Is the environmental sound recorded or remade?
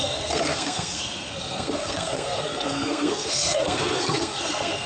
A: remade